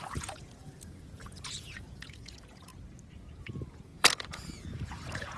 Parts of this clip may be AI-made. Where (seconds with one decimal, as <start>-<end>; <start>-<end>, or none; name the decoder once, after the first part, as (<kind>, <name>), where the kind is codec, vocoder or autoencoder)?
0.0-2.7 (vocoder, Vocos); 3.4-5.4